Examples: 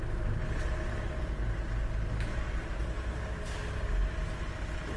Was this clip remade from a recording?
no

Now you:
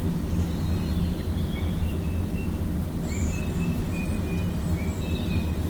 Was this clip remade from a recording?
no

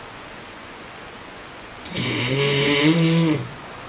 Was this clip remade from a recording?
yes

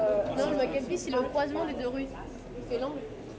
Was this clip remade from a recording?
no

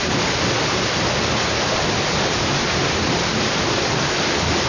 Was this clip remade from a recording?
no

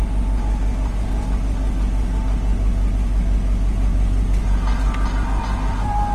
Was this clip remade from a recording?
no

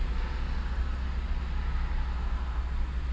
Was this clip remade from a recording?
no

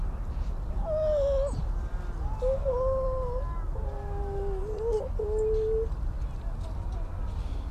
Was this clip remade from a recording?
no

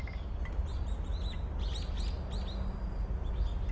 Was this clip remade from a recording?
no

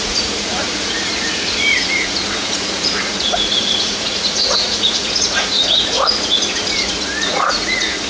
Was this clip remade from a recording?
yes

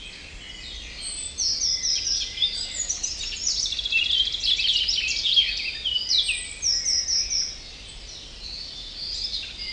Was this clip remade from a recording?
no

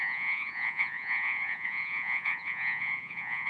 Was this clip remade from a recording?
yes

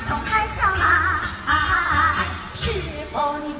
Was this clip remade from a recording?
no